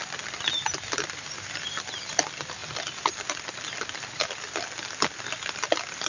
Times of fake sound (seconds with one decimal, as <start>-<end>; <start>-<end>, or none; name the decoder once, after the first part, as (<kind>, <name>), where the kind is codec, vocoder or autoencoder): none